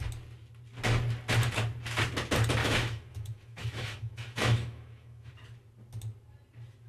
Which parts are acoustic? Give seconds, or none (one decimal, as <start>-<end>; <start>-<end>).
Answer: 0.0-2.6; 5.3-6.9

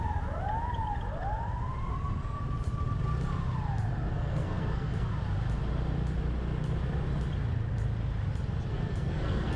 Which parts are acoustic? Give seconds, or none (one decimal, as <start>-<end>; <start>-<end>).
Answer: 0.0-1.9; 2.4-4.1; 5.1-8.7